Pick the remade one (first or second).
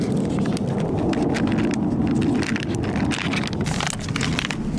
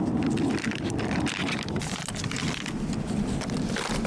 second